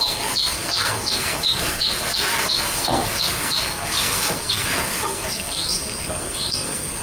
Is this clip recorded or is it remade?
remade